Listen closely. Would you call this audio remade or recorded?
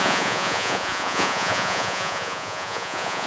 remade